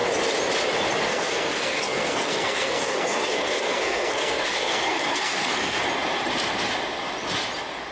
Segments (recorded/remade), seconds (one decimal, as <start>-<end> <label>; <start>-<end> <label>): 0.0-1.1 recorded; 1.1-5.8 remade; 5.8-7.9 recorded